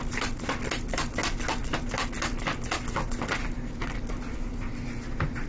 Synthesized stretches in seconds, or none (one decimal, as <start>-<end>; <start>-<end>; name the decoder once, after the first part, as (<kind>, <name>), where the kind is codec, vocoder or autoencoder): none